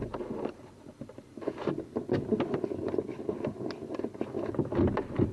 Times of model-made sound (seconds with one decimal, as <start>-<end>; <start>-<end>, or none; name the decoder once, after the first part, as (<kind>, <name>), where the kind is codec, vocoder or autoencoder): 2.3-3.0 (vocoder, BigVGAN v2)